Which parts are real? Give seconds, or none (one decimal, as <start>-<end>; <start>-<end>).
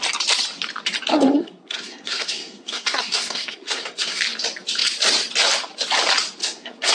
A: 0.0-1.1; 4.2-6.4